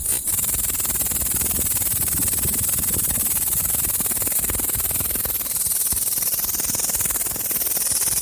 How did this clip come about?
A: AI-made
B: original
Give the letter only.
B